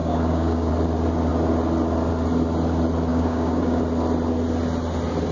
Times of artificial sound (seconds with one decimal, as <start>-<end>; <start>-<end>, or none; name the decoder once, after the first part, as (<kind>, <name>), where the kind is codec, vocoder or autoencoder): 0.0-0.7 (codec, DAC); 3.1-3.8